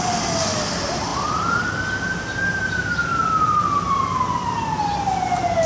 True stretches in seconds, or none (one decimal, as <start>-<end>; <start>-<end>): 0.0-5.7